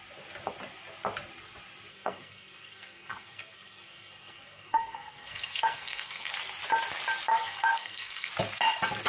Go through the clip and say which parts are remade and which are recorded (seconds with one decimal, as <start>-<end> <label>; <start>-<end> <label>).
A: 0.0-1.9 recorded; 1.9-6.3 remade; 6.3-7.3 recorded; 7.3-8.3 remade; 8.3-9.1 recorded